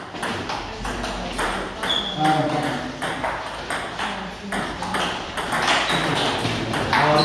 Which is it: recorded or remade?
recorded